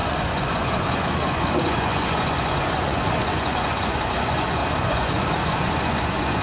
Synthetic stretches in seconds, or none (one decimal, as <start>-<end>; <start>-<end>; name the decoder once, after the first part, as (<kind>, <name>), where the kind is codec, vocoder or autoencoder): 0.0-6.4 (vocoder, Vocos)